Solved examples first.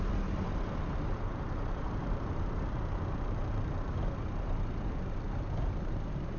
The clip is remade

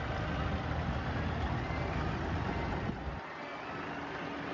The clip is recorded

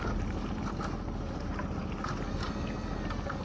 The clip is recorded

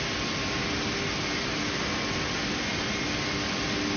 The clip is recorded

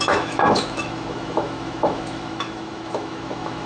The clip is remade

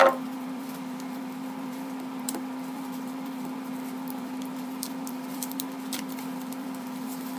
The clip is remade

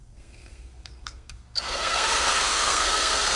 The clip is remade